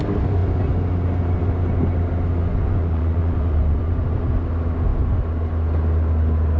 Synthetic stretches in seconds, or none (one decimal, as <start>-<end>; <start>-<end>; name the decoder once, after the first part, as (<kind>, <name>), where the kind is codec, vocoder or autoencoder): 2.5-3.9 (vocoder, Vocos)